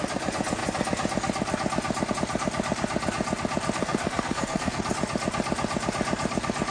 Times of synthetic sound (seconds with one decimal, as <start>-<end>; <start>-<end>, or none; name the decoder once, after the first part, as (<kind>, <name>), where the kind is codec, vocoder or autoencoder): 3.8-4.8 (codec, SNAC)

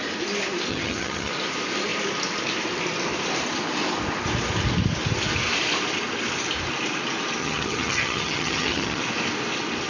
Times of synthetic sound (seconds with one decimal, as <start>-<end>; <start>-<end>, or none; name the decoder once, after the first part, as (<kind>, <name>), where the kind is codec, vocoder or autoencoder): 0.7-1.3 (vocoder, HiFi-GAN); 7.4-9.0

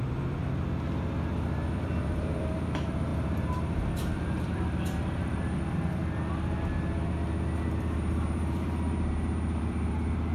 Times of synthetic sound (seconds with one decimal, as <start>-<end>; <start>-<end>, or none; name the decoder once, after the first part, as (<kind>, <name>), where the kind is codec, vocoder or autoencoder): 0.0-0.4 (vocoder, BigVGAN v2); 1.8-6.0; 7.8-10.3

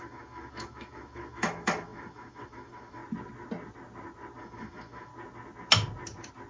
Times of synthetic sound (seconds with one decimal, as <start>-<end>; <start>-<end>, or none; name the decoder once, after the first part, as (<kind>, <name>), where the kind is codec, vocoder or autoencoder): 0.0-3.0 (autoencoder, DAC-VAE); 4.4-5.1

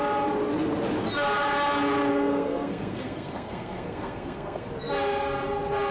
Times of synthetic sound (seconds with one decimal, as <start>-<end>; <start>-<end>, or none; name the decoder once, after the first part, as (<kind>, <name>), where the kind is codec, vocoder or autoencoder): 2.1-4.7 (codec, SNAC)

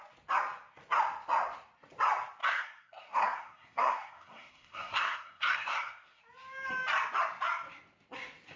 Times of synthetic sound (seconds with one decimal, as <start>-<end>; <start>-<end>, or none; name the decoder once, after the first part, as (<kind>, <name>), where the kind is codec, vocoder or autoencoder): 2.4-6.2 (codec, SNAC)